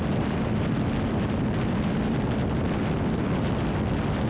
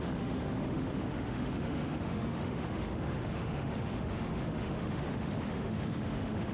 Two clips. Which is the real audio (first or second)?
first